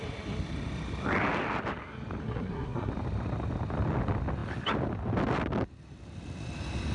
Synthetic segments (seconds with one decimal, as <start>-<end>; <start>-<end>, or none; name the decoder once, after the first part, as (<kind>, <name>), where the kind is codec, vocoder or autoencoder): 2.2-2.9 (codec, SNAC)